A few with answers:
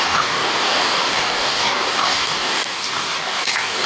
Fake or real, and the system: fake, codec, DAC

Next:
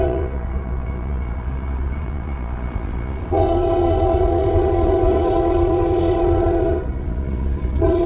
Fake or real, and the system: fake, vocoder, Vocos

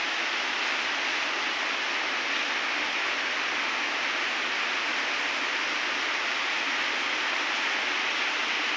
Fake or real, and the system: real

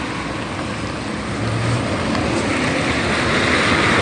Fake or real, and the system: real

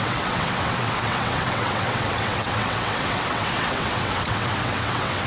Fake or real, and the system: fake, vocoder, WaveNeXt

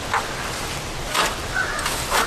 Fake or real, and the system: real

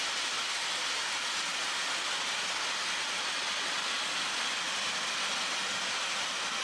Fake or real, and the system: real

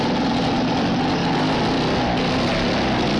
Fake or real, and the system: real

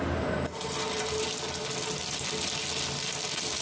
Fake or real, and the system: real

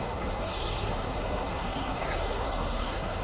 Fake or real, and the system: fake, codec, SNAC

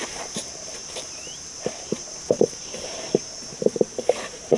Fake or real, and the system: fake, vocoder, BigVGAN v2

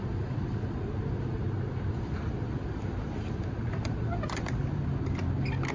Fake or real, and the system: real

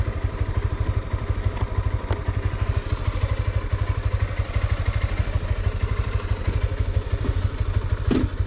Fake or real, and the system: real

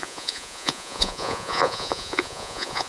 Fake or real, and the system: fake, vocoder, Vocos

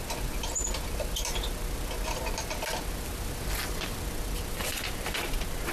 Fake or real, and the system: real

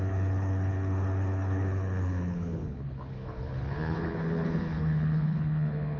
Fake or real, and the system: fake, codec, HILCodec